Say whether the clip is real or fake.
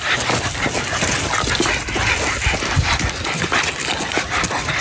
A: real